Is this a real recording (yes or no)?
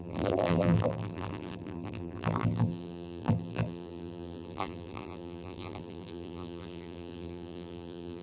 no